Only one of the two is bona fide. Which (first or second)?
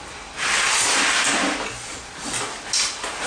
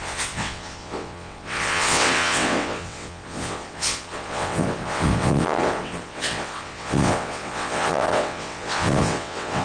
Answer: first